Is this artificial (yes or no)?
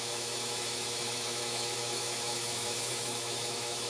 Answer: yes